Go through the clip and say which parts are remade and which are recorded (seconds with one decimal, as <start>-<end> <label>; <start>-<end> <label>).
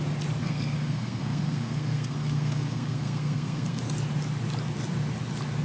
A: 0.0-0.4 recorded; 0.4-3.8 remade; 3.8-5.6 recorded